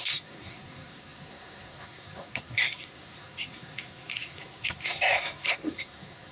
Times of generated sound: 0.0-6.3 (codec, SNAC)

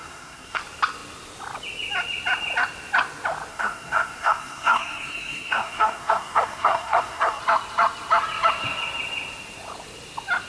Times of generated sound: 0.0-0.6 (codec, SNAC); 3.5-7.4

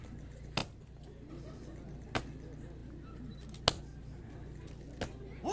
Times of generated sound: none

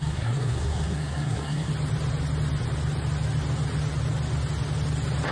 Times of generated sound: 0.0-1.7 (codec, SNAC)

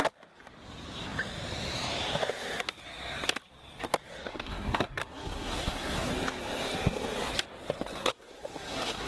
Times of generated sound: 4.3-6.1 (codec, SNAC); 8.0-9.1